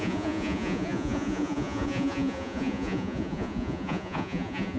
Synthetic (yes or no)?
yes